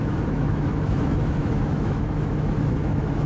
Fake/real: fake